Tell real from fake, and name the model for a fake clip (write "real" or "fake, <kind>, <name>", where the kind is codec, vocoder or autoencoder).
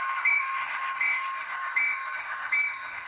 fake, autoencoder, DAC-VAE